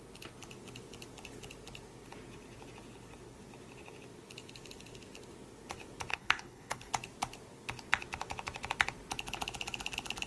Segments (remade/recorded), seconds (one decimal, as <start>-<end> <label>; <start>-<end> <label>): 0.0-6.1 recorded; 6.1-6.9 remade; 6.9-10.3 recorded